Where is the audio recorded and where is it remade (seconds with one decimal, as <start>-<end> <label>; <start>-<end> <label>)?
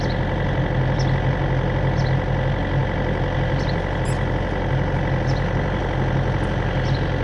0.0-7.2 recorded